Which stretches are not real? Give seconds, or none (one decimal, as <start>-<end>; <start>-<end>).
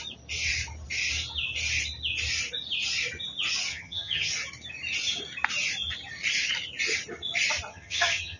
3.7-4.3; 7.7-8.4